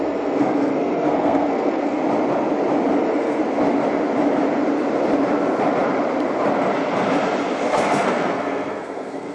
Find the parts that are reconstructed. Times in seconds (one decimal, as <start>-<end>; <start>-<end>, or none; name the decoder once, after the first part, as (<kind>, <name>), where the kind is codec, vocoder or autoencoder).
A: 0.0-2.0 (codec, SNAC); 3.0-3.4; 8.0-9.3